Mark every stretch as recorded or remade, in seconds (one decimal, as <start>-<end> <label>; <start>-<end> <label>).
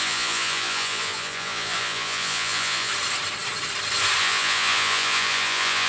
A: 0.0-2.9 remade; 2.9-4.2 recorded; 4.2-5.9 remade